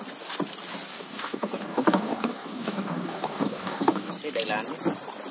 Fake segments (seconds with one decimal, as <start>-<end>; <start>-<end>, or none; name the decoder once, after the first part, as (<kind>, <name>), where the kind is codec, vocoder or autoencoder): 0.9-4.1 (codec, DAC)